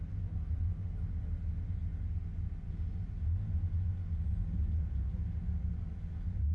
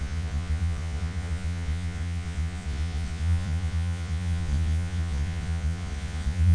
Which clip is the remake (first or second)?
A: second